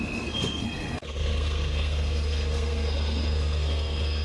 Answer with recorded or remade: remade